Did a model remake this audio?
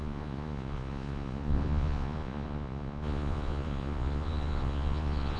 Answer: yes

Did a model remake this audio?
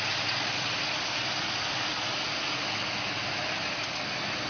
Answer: no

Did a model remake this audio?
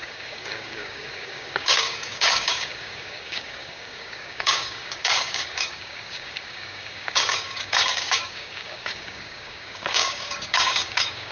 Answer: yes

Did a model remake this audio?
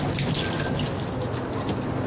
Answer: no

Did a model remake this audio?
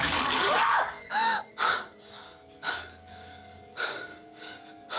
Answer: yes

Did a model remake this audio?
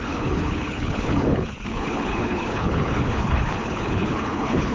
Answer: yes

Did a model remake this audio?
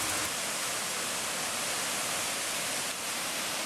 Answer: no